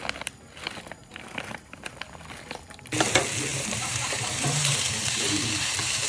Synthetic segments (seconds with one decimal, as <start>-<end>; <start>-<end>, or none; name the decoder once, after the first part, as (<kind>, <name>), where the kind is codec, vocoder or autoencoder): 1.0-1.9 (vocoder, BigVGAN v2); 3.5-6.1